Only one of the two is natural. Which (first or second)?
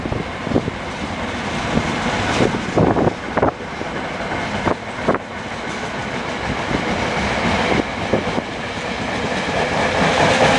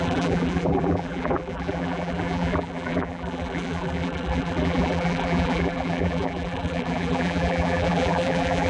first